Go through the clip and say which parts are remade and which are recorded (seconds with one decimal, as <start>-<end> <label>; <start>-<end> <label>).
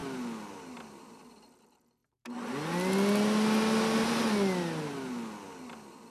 0.0-0.5 recorded; 0.5-2.0 remade; 2.0-6.1 recorded